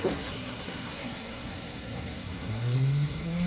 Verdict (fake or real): fake